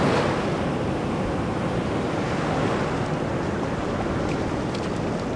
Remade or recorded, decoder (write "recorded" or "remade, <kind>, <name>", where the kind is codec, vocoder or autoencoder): recorded